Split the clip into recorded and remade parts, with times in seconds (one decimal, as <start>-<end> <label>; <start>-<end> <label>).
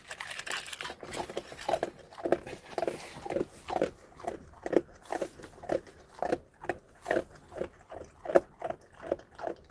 0.0-9.7 recorded